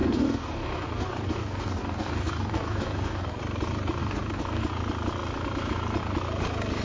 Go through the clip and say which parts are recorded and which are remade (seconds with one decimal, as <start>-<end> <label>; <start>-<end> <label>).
0.0-3.4 remade; 3.4-4.0 recorded; 4.0-4.6 remade; 4.6-6.8 recorded